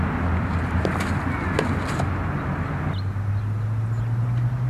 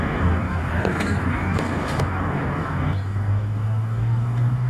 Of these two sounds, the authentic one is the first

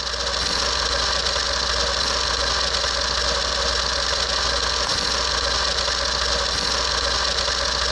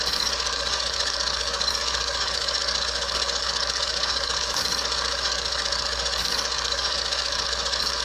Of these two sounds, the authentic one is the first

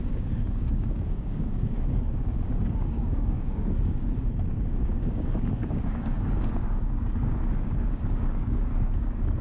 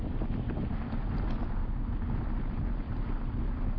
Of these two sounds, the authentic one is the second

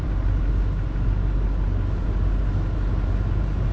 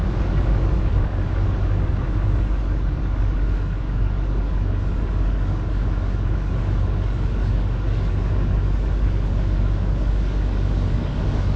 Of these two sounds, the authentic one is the first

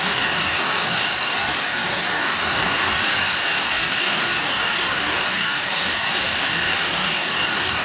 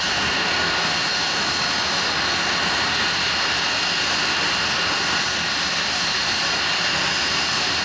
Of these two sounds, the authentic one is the second